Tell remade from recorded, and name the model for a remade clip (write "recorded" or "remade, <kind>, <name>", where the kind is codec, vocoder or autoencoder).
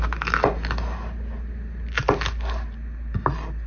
recorded